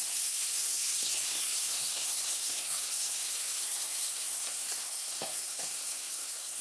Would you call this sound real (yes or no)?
no